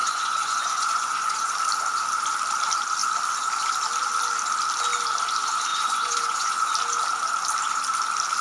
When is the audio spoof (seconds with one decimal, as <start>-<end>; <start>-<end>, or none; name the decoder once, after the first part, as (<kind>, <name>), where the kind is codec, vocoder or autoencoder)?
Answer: 0.0-1.5 (vocoder, Vocos); 5.7-6.7